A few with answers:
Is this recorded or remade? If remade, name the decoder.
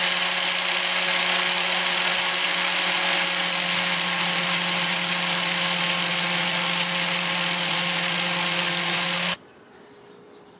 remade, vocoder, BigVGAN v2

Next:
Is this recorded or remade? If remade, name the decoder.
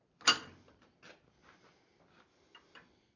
recorded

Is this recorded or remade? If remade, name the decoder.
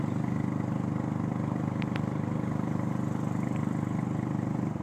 recorded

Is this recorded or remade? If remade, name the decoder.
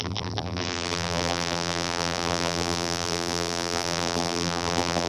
remade, vocoder, BigVGAN v2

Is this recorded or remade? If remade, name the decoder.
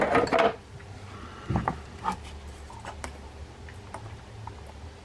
recorded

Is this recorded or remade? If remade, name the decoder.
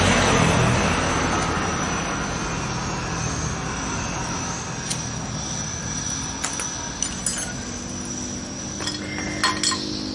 recorded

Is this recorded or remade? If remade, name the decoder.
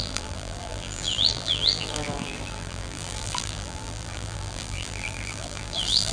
remade, vocoder, BigVGAN v2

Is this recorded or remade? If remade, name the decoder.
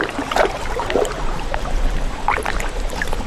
remade, vocoder, BigVGAN v2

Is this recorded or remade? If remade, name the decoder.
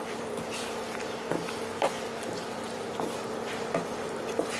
recorded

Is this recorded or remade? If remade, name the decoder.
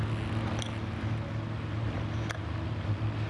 recorded